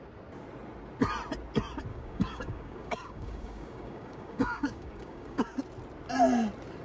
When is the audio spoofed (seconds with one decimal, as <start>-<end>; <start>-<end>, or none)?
1.9-5.6